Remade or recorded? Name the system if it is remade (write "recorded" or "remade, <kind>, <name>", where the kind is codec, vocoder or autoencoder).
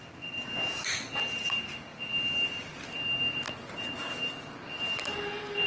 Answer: recorded